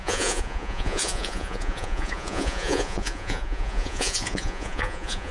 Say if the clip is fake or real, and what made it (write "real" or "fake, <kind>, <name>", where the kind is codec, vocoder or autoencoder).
fake, vocoder, Vocos